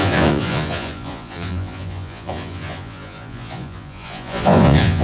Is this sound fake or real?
fake